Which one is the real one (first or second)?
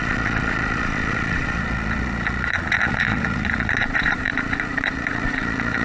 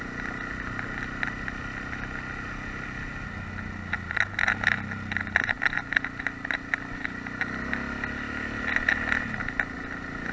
second